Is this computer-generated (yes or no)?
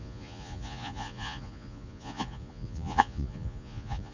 yes